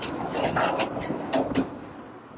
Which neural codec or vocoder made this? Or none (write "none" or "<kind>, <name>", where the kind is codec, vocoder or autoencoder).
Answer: none